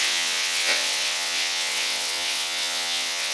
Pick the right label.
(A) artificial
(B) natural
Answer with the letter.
A